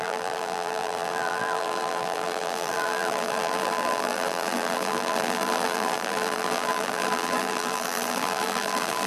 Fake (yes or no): yes